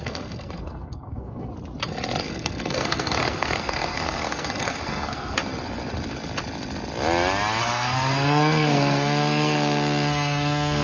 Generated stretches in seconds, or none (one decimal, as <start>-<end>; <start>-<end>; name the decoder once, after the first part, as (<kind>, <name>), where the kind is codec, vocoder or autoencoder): 0.0-1.5 (codec, SNAC); 2.2-5.4; 7.6-10.8